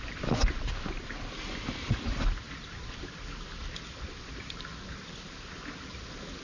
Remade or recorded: recorded